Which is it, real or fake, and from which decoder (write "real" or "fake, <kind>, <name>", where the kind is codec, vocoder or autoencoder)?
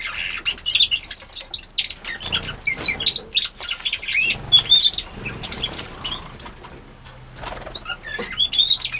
real